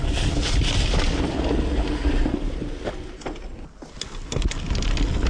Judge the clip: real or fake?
real